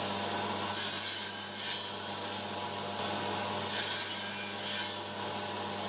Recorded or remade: recorded